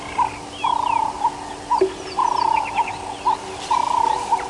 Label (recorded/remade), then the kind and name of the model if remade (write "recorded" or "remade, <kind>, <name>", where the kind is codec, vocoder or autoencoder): recorded